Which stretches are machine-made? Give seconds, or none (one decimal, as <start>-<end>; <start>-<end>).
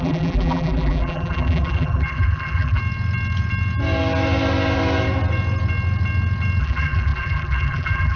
0.0-2.8; 6.6-8.2